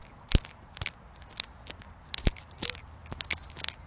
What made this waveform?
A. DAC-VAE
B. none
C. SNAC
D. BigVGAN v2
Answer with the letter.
B